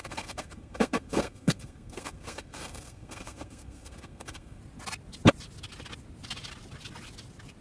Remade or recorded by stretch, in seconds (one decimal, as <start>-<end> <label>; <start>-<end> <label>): 0.0-4.6 remade; 4.6-7.6 recorded